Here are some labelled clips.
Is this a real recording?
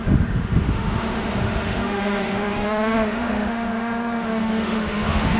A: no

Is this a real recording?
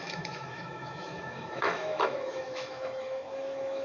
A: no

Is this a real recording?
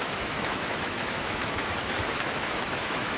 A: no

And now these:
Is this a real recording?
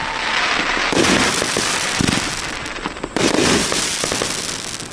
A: yes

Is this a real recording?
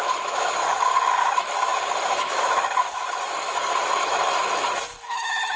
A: no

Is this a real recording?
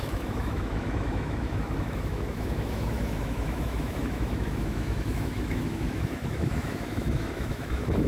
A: no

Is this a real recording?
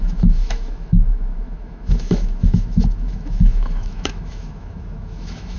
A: no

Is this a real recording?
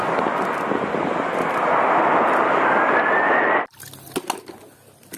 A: yes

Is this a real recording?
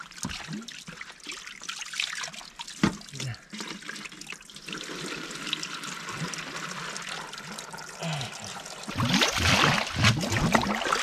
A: yes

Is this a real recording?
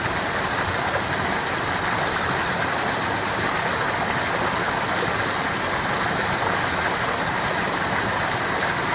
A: yes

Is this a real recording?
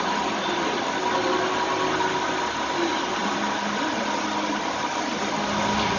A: yes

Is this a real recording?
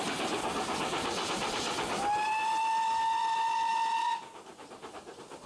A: yes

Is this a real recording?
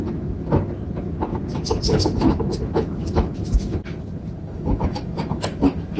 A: no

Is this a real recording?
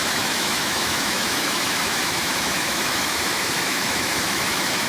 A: no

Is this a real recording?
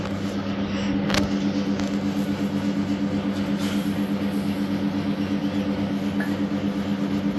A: yes